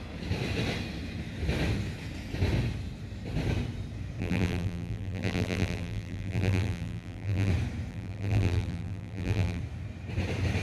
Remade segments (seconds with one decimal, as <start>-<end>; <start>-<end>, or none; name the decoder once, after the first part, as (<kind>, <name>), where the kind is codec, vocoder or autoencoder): 4.2-7.5 (vocoder, BigVGAN v2); 7.9-9.6